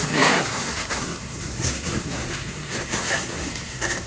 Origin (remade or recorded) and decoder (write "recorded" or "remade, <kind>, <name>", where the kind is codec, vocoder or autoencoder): remade, codec, SNAC